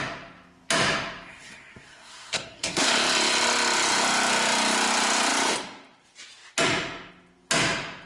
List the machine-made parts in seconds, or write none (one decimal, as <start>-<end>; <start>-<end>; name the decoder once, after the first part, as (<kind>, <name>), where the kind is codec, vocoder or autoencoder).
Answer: 1.3-2.9 (codec, SNAC)